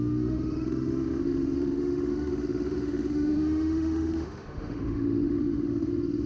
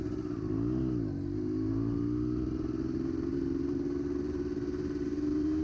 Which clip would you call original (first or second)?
second